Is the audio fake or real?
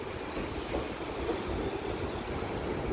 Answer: real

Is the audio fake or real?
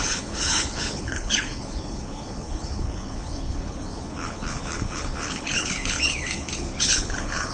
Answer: fake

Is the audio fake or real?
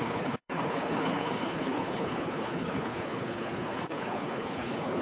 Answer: fake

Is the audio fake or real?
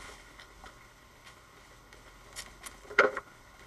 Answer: fake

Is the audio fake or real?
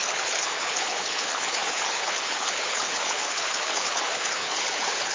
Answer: fake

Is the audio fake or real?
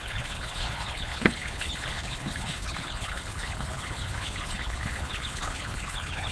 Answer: fake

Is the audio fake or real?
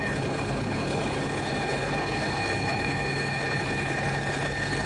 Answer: fake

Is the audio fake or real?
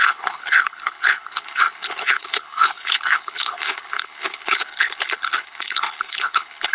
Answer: fake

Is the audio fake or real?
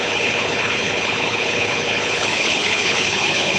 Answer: fake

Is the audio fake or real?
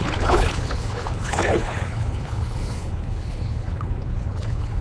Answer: fake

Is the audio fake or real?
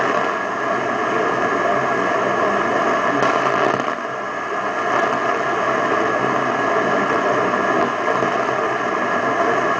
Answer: real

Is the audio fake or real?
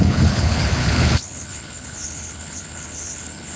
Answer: fake